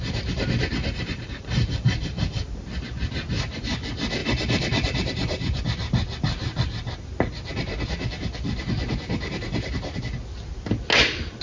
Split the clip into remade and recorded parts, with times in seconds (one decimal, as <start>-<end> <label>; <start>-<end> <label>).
0.0-0.8 recorded; 0.8-2.4 remade; 2.4-4.2 recorded; 4.2-5.6 remade; 5.6-11.4 recorded